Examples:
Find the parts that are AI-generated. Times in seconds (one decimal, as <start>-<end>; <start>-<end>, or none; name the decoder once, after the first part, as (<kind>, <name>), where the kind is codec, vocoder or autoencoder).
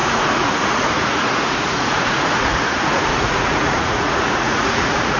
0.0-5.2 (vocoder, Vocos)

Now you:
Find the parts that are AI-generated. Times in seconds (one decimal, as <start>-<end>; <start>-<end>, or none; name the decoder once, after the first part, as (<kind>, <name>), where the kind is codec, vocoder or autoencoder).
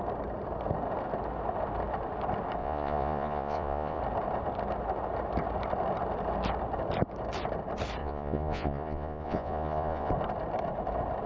2.6-4.0 (vocoder, Vocos); 8.0-10.1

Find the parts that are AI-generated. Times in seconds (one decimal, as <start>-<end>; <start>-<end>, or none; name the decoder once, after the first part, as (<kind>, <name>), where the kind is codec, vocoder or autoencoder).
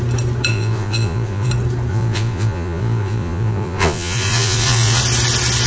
0.5-1.5 (vocoder, Vocos); 1.9-5.0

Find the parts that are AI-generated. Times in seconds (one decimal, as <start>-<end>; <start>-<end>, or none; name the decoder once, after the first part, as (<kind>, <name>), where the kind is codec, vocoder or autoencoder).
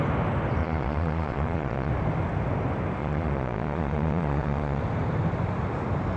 0.6-1.9 (vocoder, Vocos); 3.0-4.8